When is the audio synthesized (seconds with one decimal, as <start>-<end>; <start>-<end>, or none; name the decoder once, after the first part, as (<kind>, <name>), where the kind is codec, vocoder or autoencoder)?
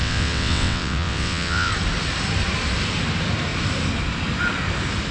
0.0-1.7 (vocoder, WaveNeXt)